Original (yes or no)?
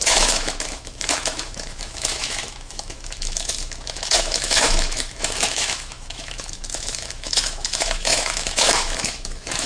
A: no